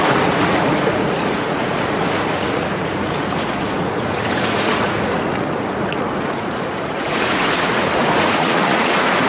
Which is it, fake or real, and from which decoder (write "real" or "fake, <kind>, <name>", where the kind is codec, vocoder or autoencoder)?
fake, vocoder, Vocos